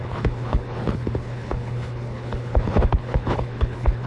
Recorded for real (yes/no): no